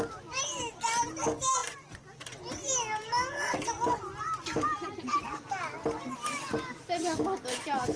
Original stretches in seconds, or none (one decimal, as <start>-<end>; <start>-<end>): 0.0-8.0